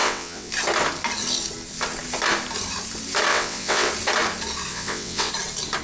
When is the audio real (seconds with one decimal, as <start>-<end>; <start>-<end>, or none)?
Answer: 0.5-3.3; 3.9-4.7; 5.3-5.8